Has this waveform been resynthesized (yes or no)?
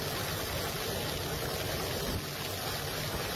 no